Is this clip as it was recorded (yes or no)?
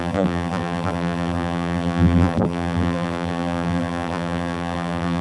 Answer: no